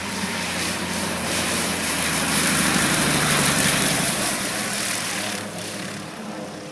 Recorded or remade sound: remade